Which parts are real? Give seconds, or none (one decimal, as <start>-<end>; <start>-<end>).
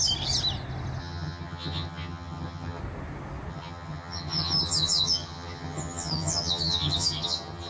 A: 0.0-1.0; 2.8-3.5